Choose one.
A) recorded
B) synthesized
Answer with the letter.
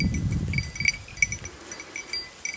A